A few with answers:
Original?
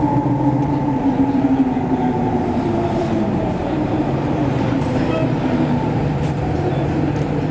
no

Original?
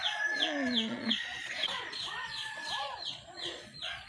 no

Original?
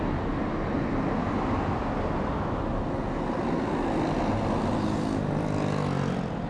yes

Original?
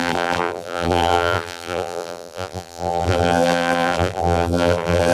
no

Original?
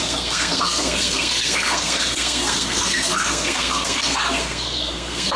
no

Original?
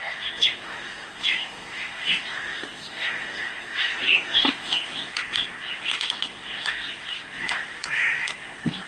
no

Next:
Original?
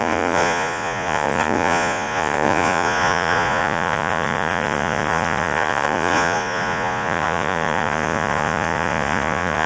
no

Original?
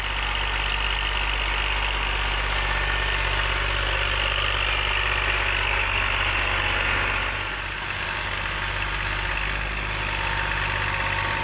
yes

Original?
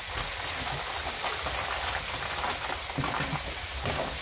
yes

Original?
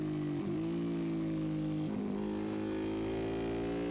yes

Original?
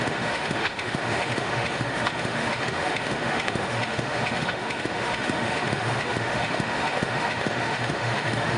no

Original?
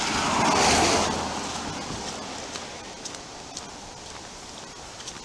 yes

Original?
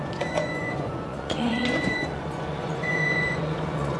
no